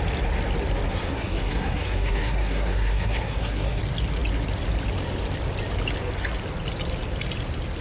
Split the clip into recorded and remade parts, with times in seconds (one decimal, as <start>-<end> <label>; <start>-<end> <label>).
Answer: 0.0-0.9 recorded; 0.9-3.8 remade; 3.8-7.8 recorded